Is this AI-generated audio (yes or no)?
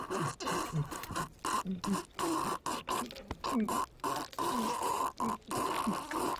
no